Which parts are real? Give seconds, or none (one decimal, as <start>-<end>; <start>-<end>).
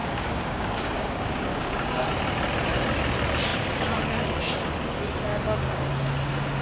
2.1-5.3; 5.9-6.6